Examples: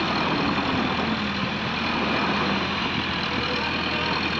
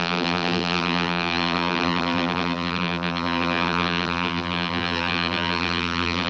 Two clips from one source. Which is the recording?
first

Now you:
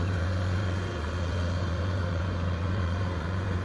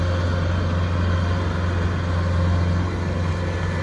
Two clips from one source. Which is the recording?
second